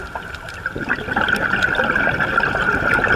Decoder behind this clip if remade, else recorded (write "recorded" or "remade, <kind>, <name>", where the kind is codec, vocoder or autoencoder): recorded